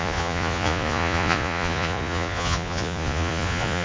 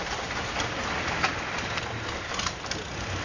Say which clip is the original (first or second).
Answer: second